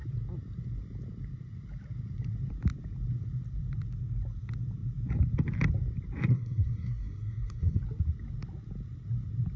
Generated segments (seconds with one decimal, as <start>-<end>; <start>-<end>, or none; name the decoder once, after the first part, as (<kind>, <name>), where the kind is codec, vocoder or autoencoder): 6.3-7.8 (codec, SNAC)